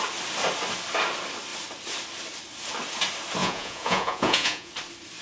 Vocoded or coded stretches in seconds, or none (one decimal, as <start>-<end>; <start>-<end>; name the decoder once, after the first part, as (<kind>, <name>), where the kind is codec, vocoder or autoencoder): 3.4-4.7 (vocoder, Vocos)